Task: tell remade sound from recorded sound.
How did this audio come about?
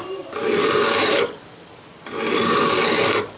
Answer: recorded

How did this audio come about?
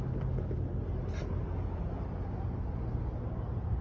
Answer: recorded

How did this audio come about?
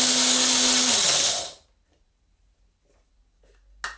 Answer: recorded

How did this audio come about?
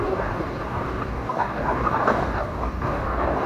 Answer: remade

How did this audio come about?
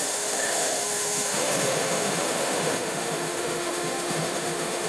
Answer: remade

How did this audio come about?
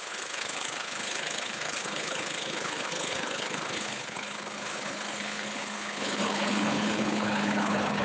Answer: remade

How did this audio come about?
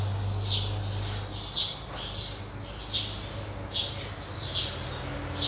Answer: recorded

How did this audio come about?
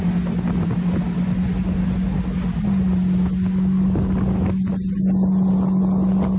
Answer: recorded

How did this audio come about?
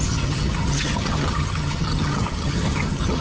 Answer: remade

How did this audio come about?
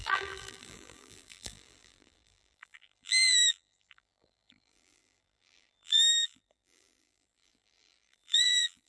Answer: remade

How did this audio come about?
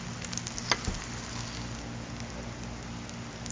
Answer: recorded